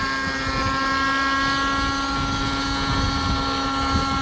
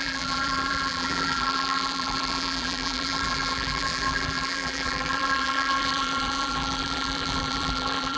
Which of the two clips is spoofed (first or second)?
second